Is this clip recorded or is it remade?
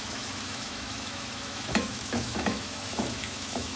remade